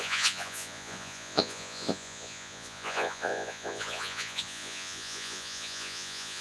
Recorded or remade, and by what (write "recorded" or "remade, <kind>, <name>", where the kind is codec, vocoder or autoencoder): remade, vocoder, Vocos